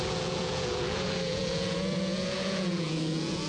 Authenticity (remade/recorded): remade